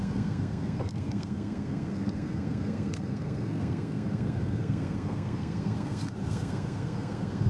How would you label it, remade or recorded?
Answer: remade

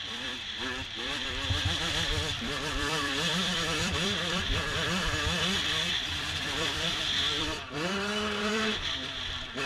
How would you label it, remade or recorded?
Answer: remade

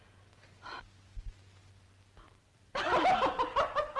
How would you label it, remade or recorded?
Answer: recorded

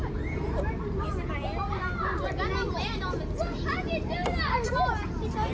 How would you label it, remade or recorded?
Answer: recorded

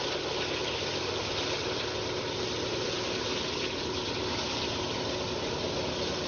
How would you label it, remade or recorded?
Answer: recorded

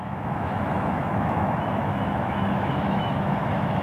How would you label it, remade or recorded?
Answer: remade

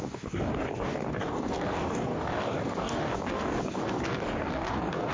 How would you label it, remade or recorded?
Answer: remade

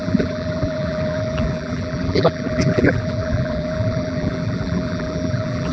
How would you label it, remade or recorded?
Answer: remade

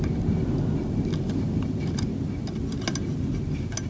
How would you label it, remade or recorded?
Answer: recorded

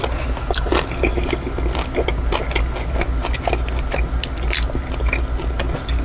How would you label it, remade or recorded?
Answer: recorded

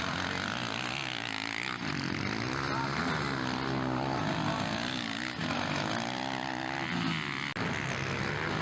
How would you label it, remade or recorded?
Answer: recorded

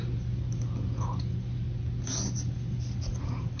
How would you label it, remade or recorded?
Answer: recorded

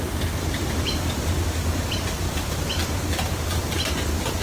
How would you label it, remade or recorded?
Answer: recorded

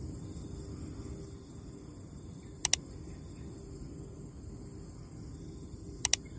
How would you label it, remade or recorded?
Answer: recorded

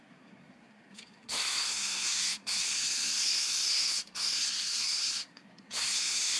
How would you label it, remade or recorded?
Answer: remade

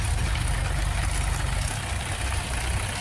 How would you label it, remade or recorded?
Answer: recorded